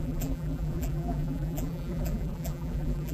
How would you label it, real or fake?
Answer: fake